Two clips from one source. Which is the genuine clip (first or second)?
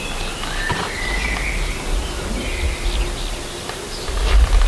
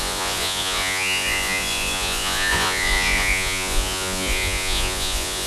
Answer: first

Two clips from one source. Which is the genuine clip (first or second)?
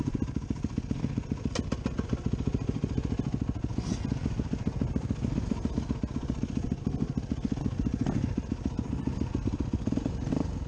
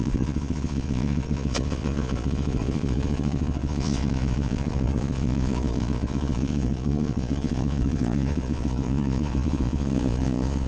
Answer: first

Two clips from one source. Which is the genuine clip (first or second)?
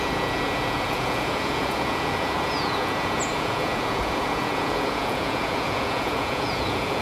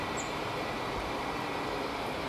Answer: second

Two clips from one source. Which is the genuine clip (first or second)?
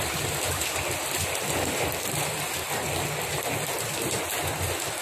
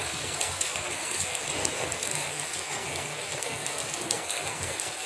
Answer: first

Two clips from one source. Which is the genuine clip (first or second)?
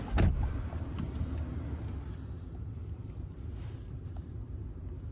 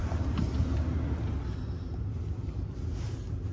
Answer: second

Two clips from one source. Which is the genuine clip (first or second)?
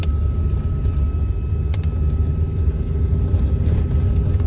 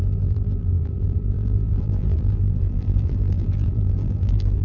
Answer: first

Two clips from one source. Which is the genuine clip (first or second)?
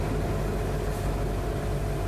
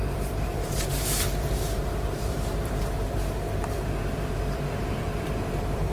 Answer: first